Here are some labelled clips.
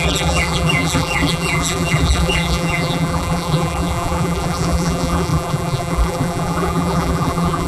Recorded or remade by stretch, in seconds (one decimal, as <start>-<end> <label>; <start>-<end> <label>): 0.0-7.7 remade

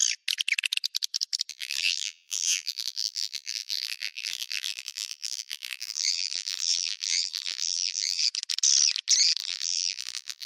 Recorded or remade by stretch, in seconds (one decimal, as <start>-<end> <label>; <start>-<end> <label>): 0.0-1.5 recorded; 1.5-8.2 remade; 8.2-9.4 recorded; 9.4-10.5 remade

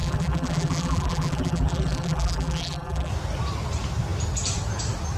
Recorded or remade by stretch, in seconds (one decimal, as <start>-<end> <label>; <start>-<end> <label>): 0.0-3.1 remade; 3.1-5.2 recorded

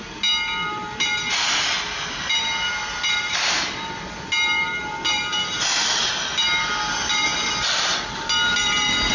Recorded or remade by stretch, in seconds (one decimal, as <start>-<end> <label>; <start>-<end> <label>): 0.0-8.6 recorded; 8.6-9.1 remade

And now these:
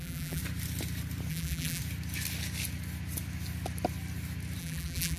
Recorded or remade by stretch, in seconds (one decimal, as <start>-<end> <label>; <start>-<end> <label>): 0.0-0.4 remade; 0.4-1.3 recorded; 1.3-1.8 remade; 1.8-4.6 recorded; 4.6-5.2 remade